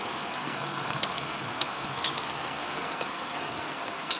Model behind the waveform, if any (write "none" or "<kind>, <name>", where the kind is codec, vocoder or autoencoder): codec, SNAC